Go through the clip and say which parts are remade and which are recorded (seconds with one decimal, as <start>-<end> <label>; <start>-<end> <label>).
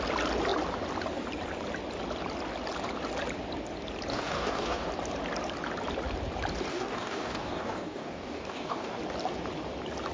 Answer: 0.0-4.1 recorded; 4.1-4.9 remade; 4.9-6.7 recorded; 6.7-9.0 remade; 9.0-10.1 recorded